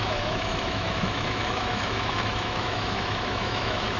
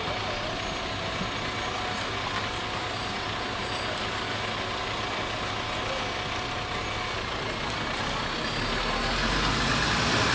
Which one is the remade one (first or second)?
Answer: first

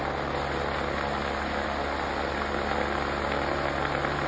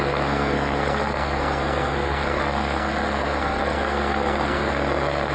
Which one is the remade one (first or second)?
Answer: second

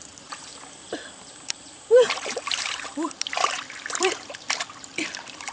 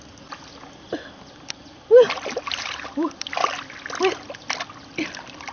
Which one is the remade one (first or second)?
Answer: first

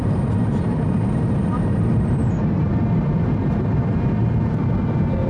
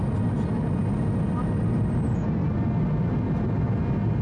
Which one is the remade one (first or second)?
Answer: first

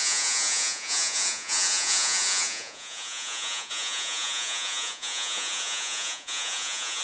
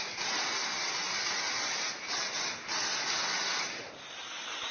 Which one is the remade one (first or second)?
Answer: first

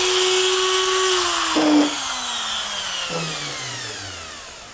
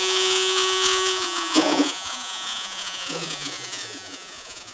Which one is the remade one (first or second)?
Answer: second